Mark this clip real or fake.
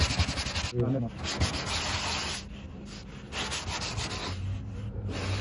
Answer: real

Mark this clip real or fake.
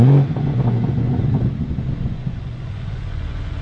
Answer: fake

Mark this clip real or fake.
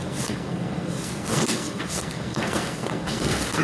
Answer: fake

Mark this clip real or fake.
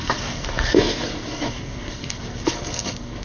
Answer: fake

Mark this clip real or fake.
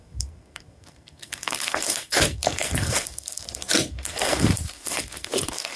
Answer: fake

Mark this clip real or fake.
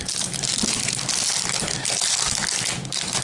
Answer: real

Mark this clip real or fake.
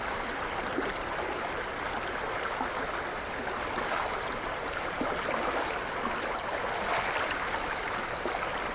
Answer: real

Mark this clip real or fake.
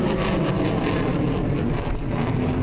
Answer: real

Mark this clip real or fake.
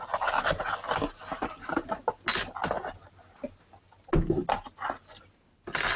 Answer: real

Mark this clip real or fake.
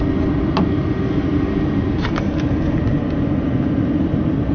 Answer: real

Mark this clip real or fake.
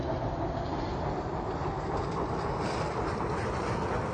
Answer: real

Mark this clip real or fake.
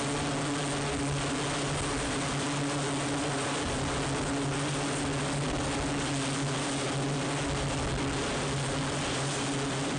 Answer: real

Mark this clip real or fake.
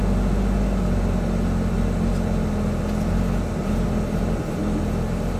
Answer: real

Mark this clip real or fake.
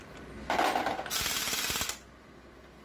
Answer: real